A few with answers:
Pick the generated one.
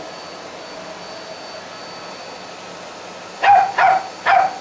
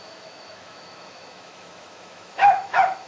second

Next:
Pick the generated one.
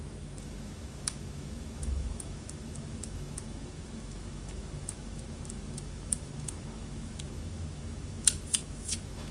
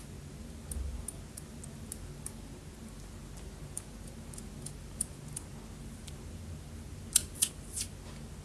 first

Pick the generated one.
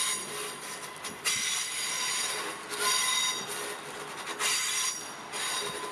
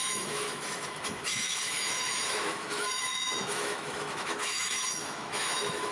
second